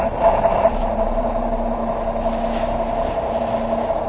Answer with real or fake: real